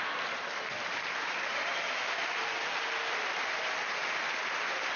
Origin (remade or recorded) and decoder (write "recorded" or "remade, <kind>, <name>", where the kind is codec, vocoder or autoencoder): recorded